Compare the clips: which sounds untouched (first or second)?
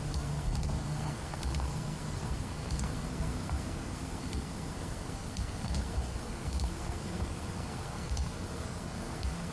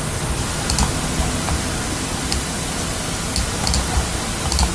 second